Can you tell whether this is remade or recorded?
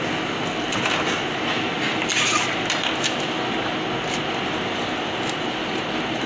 recorded